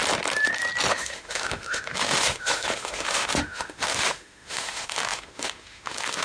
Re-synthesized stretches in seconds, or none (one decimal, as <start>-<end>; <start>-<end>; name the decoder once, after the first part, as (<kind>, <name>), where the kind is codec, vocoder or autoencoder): 0.9-6.2 (autoencoder, DAC-VAE)